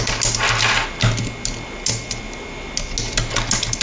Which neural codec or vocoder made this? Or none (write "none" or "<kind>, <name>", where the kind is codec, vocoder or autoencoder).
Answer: none